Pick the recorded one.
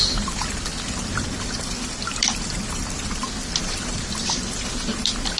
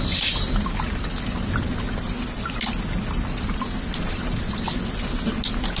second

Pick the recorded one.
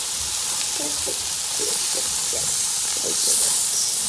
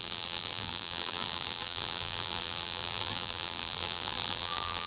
first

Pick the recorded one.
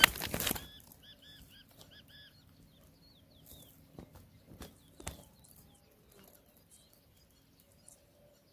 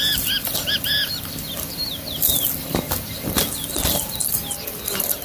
first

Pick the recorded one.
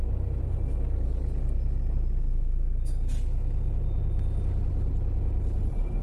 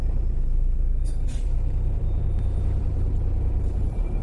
first